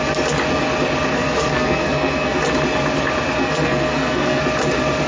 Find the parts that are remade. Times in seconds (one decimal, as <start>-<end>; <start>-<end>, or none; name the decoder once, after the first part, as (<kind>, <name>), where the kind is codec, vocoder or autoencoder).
1.1-2.4 (codec, SNAC); 3.4-4.4